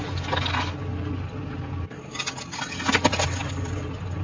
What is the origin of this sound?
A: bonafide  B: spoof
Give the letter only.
A